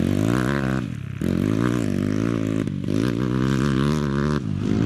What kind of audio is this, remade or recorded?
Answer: recorded